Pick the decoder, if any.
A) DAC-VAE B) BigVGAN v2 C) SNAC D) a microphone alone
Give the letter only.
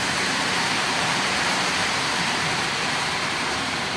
B